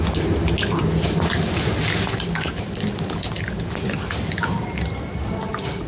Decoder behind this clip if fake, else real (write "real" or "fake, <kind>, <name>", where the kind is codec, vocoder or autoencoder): real